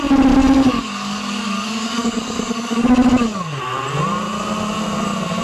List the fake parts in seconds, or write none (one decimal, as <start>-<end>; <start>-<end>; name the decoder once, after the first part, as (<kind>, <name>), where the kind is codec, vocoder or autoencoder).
0.4-3.6 (codec, DAC)